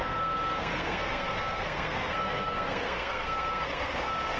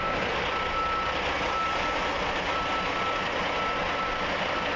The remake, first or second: first